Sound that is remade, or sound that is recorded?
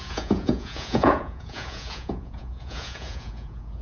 remade